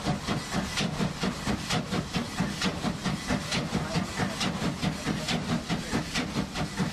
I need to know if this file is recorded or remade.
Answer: recorded